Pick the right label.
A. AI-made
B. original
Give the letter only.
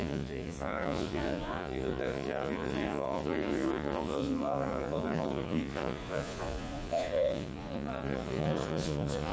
A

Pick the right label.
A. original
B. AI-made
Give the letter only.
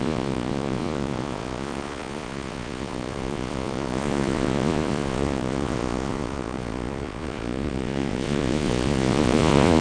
B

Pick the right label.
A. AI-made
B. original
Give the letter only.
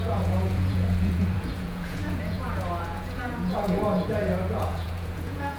A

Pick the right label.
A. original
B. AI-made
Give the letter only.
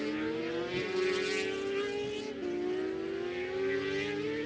A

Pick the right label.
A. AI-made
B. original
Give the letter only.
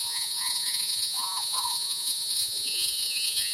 A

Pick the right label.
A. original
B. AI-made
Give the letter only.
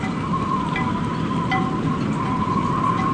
A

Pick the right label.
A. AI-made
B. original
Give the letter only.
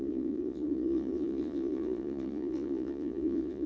A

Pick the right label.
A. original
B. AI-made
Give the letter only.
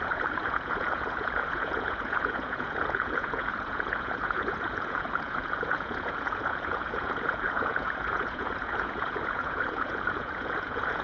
B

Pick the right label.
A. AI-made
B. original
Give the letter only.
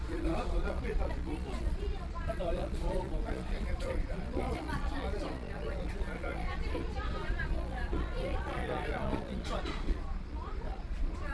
A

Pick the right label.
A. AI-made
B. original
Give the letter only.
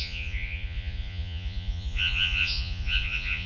A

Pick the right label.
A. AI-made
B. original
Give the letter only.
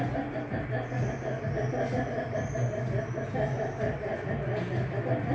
B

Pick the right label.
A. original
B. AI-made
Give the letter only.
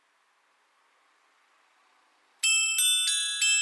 A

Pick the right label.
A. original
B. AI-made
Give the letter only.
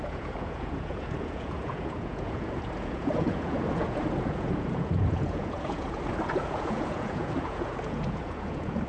B